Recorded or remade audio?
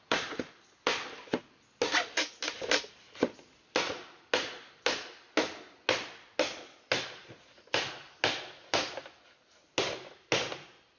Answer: recorded